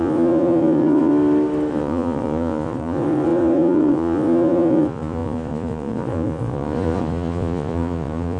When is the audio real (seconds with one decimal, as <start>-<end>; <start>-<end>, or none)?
1.1-1.7